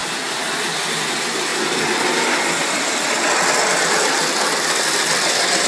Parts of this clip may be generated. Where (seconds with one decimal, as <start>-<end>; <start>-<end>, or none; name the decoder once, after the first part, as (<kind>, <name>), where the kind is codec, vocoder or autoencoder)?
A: none